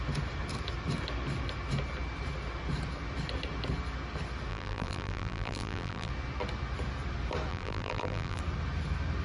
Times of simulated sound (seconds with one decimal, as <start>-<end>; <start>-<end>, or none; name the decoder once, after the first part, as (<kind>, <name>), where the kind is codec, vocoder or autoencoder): 4.5-6.1 (vocoder, BigVGAN v2); 7.5-8.4